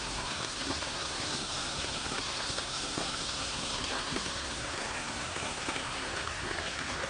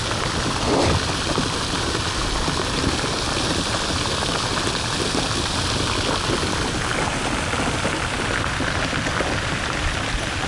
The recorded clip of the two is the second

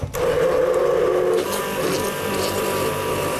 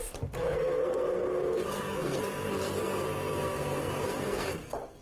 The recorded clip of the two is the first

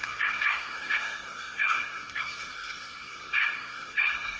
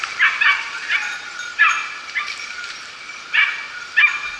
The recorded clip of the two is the second